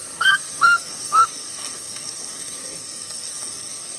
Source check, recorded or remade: remade